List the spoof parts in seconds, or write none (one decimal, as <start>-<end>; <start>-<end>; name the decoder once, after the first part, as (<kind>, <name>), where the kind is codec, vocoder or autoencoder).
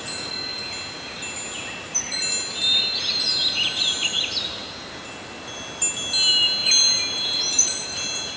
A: none